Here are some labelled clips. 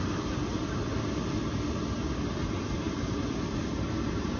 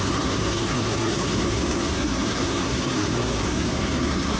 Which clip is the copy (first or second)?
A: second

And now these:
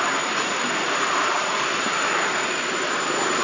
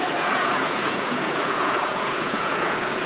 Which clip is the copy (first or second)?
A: second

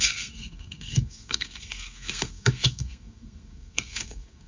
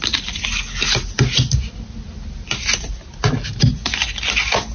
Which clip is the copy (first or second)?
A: first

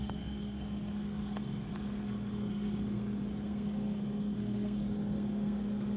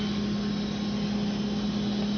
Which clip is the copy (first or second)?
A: first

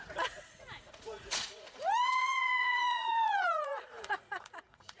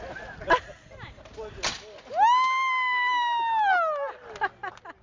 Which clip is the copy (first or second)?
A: first